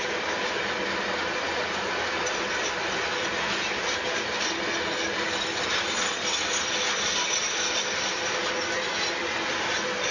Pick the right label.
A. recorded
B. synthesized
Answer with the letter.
A